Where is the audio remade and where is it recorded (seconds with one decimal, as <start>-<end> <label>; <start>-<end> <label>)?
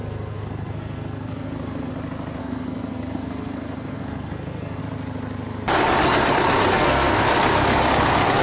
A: 0.0-1.9 remade; 1.9-2.4 recorded; 2.4-4.8 remade; 4.8-6.7 recorded; 6.7-7.2 remade; 7.2-8.4 recorded